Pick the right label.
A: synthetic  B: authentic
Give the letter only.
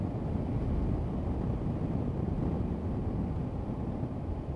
B